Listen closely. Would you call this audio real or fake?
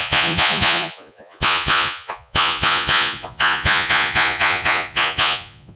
fake